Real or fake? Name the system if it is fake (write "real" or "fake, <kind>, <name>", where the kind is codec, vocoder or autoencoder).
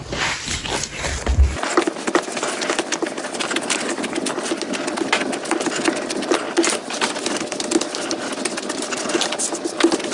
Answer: real